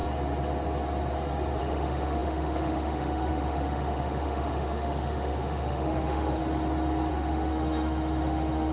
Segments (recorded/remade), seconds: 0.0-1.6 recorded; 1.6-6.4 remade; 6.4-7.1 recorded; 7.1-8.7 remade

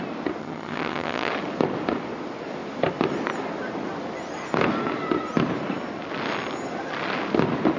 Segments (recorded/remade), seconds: 0.0-0.4 recorded; 0.4-1.3 remade; 1.3-7.8 recorded

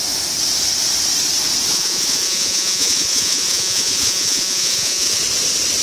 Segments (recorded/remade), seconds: 0.0-1.7 recorded; 1.7-5.2 remade; 5.2-5.8 recorded

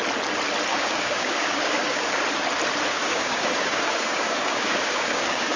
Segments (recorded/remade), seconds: 0.0-0.7 recorded; 0.7-2.2 remade; 2.2-2.9 recorded; 2.9-5.6 remade